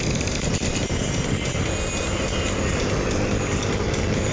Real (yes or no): yes